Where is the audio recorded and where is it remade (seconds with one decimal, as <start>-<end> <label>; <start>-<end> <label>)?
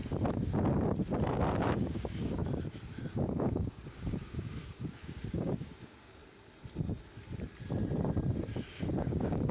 0.0-1.7 recorded; 1.7-2.4 remade; 2.4-3.1 recorded; 3.1-6.2 remade; 6.2-9.0 recorded; 9.0-9.5 remade